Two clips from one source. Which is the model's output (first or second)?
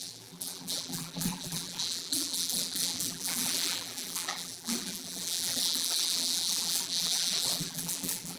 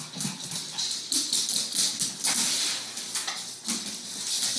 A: first